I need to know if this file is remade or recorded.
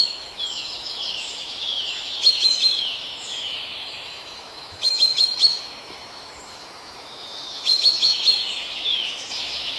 remade